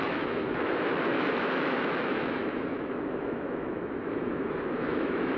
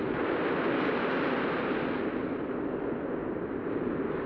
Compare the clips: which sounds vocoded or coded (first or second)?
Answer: first